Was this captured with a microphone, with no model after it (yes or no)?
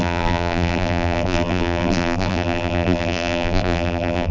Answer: no